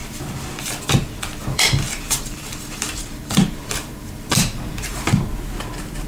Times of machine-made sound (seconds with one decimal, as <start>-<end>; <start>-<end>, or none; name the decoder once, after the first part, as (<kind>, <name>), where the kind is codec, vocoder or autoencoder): 1.4-5.0 (vocoder, BigVGAN v2)